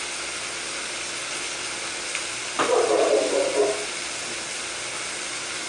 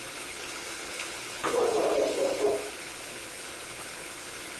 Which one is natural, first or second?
first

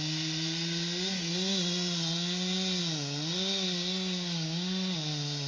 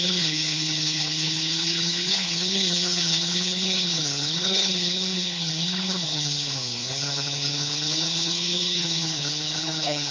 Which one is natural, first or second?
first